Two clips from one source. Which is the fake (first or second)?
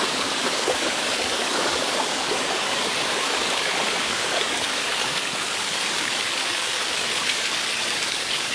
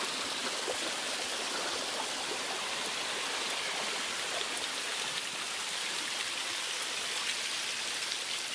first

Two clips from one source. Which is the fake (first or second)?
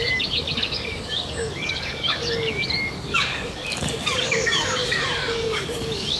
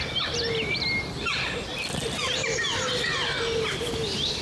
first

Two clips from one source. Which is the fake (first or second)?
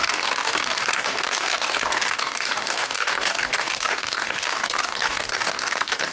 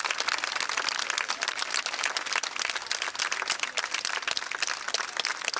first